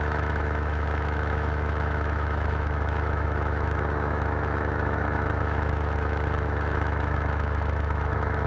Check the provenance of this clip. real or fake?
fake